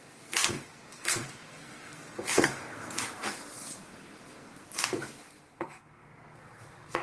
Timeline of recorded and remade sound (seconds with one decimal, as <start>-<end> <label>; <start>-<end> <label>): 0.0-7.0 remade